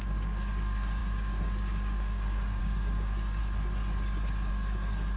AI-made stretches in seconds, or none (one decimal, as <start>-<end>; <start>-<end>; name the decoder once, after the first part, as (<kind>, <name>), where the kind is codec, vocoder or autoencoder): 0.0-3.4 (codec, DAC); 4.5-5.2